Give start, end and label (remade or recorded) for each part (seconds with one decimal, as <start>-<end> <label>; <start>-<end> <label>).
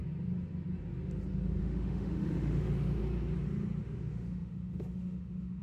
0.0-1.6 recorded; 1.6-3.0 remade; 3.0-3.8 recorded; 3.8-5.6 remade